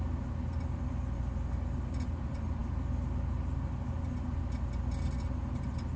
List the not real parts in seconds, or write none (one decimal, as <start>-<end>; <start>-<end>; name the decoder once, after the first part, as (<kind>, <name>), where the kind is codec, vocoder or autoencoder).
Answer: none